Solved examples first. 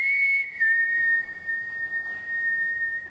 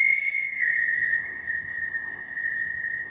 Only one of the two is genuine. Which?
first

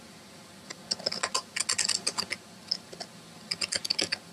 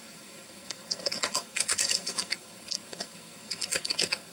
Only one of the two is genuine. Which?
first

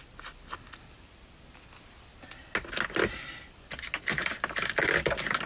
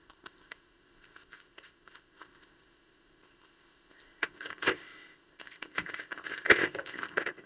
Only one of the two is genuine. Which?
first